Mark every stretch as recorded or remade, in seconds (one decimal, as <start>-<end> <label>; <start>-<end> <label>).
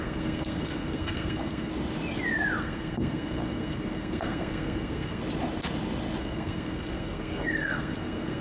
0.0-1.7 remade; 1.7-2.6 recorded; 2.6-5.2 remade; 5.2-6.2 recorded; 6.2-8.4 remade